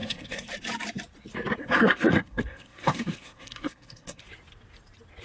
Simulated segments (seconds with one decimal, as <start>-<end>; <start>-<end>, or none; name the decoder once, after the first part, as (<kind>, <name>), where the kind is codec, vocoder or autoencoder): 0.0-0.5 (codec, SNAC); 1.6-4.2